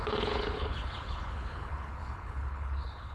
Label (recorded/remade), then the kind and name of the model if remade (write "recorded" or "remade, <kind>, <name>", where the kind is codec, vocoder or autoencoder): remade, codec, HILCodec